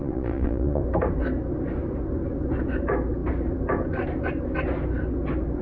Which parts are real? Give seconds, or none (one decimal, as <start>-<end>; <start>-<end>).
0.8-5.6